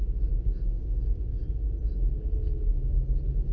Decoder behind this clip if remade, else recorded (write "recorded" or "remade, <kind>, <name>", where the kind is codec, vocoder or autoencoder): recorded